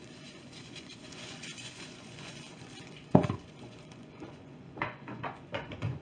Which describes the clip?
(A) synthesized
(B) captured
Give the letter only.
A